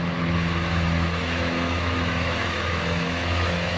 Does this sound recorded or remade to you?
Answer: remade